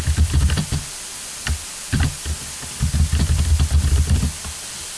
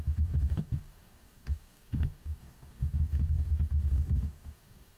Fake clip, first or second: second